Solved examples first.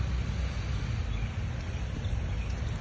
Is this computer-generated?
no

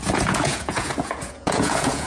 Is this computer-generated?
yes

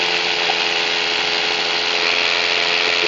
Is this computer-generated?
no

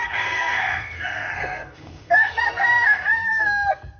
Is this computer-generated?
yes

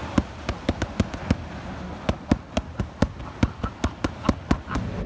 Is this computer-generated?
no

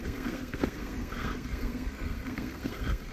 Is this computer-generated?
yes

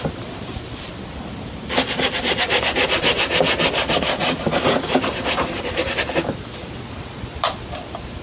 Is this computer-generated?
no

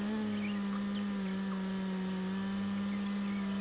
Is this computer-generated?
no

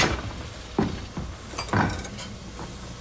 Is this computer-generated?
no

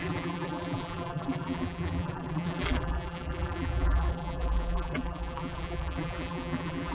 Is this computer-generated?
yes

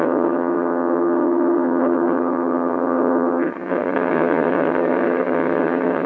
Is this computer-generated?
yes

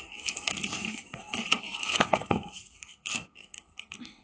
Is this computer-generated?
yes